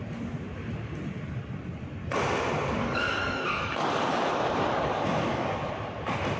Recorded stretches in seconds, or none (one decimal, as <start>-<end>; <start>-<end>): 0.0-2.8; 5.7-6.4